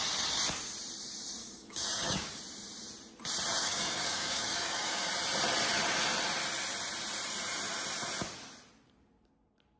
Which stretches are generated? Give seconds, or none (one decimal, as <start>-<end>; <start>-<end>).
1.4-2.4; 3.6-5.1